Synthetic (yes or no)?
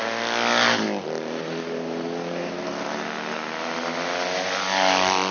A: no